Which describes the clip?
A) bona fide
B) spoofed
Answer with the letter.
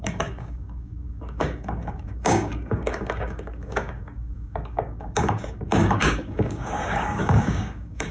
B